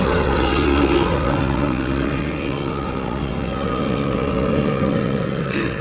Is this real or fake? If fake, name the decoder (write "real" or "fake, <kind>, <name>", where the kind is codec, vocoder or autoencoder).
fake, vocoder, WaveNeXt